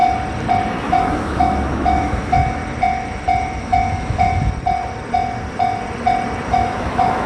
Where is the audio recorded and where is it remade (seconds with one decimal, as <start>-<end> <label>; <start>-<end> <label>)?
0.0-0.8 recorded; 0.8-2.6 remade; 2.6-3.6 recorded; 3.6-4.4 remade; 4.4-6.5 recorded; 6.5-7.3 remade